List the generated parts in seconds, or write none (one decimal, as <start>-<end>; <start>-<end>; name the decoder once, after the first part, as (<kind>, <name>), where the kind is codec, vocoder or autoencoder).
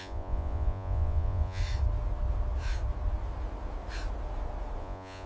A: 0.0-1.6 (vocoder, Vocos); 4.8-5.3